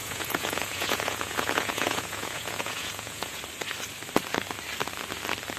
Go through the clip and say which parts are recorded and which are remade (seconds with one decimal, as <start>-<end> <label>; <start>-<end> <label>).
0.0-3.4 remade; 3.4-5.6 recorded